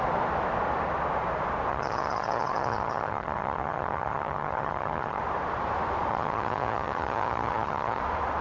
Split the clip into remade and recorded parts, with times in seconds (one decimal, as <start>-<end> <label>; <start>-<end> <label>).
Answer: 0.0-1.7 recorded; 1.7-5.2 remade; 5.2-6.1 recorded; 6.1-8.0 remade; 8.0-8.4 recorded